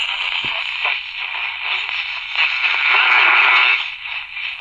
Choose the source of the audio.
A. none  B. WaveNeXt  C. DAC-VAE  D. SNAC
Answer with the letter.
A